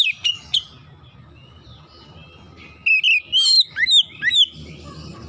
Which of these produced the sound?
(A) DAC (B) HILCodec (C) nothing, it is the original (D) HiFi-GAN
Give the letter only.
C